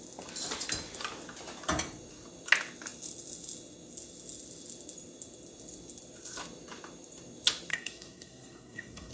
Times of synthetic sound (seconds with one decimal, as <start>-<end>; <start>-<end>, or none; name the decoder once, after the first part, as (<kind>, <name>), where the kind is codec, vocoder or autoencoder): 7.7-9.1 (codec, SNAC)

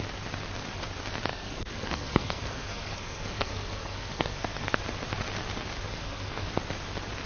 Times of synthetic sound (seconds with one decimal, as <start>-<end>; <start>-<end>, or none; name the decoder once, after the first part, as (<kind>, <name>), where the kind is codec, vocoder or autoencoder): 1.3-4.8 (codec, SNAC); 5.9-6.5

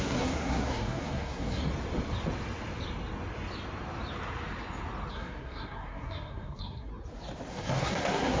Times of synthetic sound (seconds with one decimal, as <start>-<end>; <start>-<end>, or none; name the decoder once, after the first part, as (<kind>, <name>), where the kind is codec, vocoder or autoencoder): 0.0-1.6 (codec, SNAC); 5.1-6.9; 7.5-8.4

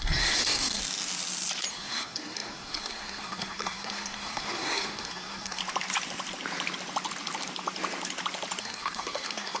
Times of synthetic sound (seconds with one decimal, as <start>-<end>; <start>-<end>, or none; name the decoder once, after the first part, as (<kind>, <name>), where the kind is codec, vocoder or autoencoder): 0.0-0.8 (codec, SNAC); 1.7-5.6; 8.6-9.6

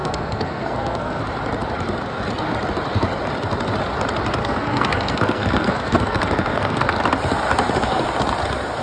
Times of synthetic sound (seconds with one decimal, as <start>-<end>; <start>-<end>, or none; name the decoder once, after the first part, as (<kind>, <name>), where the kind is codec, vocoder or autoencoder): 0.0-1.2 (codec, SNAC); 4.4-6.8

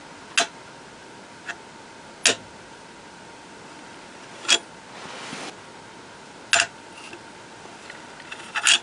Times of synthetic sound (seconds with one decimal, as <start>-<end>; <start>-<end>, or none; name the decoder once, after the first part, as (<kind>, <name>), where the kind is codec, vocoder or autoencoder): none

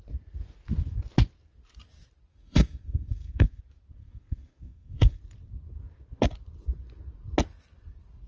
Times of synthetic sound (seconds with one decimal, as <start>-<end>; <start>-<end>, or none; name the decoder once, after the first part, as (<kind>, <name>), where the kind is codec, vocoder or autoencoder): 2.3-3.6 (codec, SNAC); 4.0-5.2